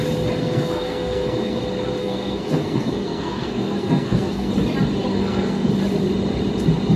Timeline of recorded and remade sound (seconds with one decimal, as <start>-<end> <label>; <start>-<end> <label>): 0.0-0.4 recorded; 0.4-1.6 remade; 1.6-2.0 recorded; 2.0-4.5 remade; 4.5-5.1 recorded; 5.1-5.7 remade; 5.7-7.0 recorded